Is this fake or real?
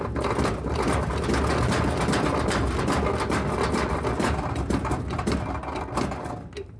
real